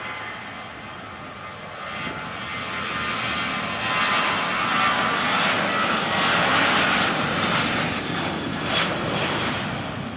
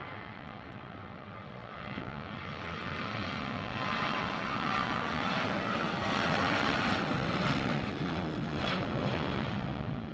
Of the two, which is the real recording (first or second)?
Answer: first